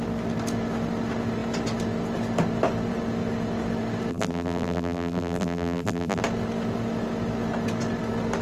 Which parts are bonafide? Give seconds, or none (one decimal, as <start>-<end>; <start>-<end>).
0.0-4.1; 6.2-8.4